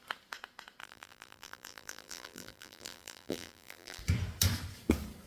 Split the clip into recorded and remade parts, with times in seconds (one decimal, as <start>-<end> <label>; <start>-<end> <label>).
0.0-0.8 recorded; 0.8-4.0 remade; 4.0-5.3 recorded